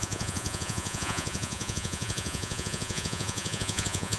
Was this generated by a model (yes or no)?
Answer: yes